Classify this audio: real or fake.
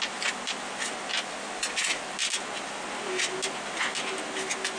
real